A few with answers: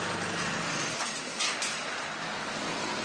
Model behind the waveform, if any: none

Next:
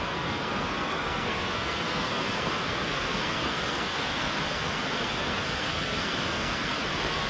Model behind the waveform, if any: codec, SNAC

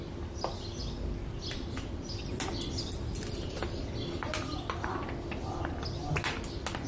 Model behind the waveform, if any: none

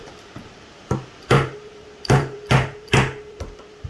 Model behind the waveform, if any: vocoder, BigVGAN v2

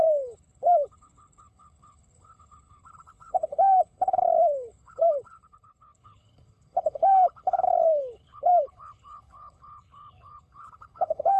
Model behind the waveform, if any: codec, HILCodec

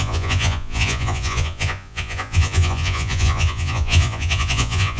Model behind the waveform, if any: vocoder, Vocos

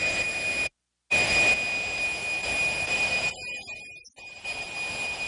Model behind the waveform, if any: none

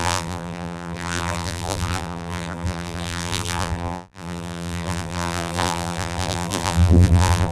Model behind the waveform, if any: vocoder, BigVGAN v2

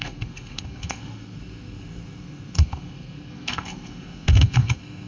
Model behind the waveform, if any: codec, SNAC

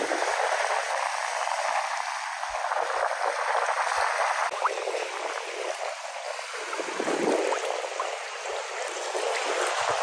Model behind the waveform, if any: none